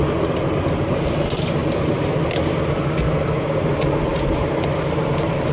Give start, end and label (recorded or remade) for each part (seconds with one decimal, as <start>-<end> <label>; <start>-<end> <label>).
0.0-4.1 recorded; 4.1-4.6 remade; 4.6-5.5 recorded